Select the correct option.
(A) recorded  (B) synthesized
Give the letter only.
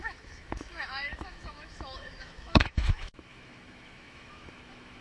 B